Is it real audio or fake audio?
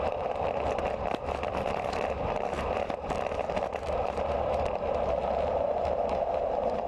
fake